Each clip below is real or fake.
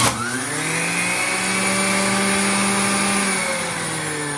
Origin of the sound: real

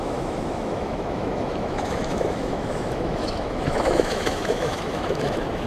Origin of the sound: fake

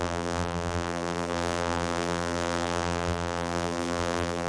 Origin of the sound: fake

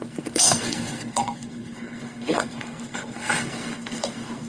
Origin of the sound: fake